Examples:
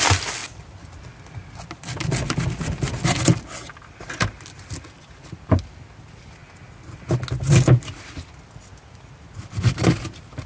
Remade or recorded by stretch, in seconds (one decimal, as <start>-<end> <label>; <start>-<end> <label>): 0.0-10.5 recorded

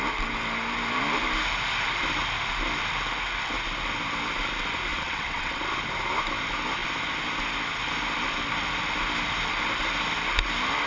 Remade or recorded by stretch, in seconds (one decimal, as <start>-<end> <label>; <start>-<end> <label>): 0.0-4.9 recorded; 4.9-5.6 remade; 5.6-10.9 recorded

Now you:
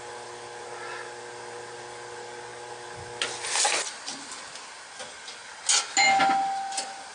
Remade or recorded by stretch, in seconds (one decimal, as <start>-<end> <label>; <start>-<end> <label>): 0.0-7.1 recorded